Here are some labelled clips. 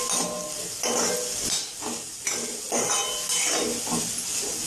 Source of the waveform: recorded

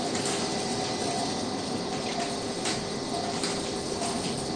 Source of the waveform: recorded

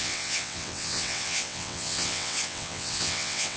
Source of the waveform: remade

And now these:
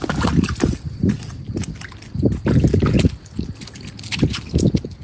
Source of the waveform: recorded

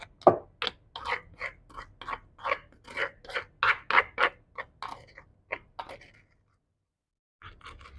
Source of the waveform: recorded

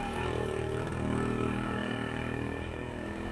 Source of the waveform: remade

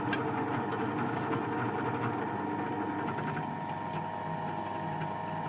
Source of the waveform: recorded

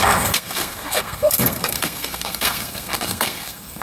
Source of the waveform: remade